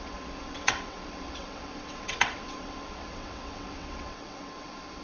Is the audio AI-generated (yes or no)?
yes